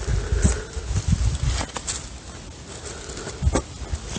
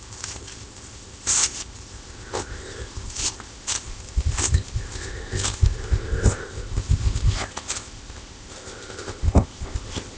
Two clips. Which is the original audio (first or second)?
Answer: first